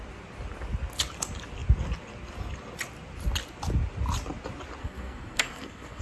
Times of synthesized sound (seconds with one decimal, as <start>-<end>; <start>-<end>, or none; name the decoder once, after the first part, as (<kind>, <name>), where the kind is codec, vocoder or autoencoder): 4.8-6.0 (codec, SNAC)